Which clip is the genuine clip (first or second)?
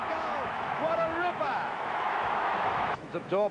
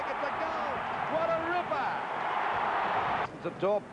second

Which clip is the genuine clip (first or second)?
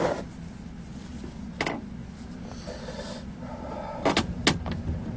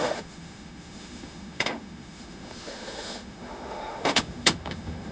first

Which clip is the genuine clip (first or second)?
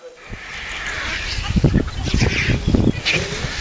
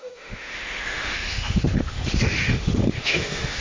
first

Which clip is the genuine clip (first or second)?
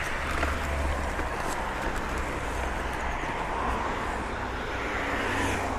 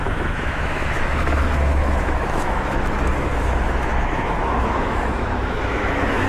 first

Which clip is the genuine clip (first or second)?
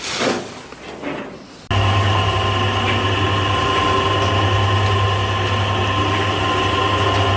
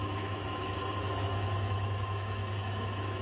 first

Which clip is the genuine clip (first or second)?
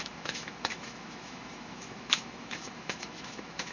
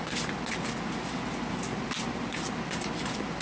second